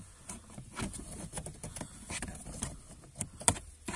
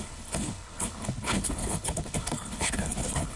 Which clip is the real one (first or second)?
first